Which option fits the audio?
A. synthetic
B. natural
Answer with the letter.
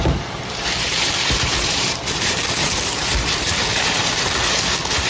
A